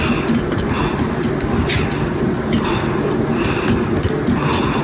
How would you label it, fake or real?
real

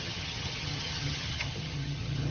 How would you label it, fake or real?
fake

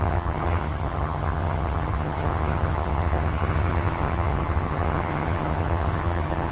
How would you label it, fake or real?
fake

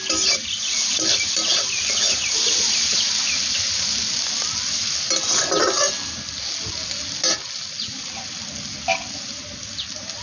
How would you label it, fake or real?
real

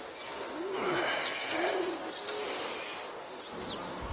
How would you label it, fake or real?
real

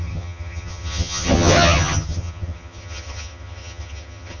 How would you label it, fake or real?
fake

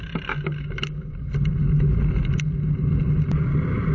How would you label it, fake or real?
real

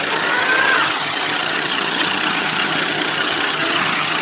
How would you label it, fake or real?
fake